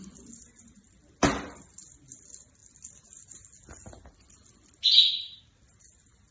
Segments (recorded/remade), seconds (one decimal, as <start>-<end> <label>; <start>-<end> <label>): 0.0-6.3 recorded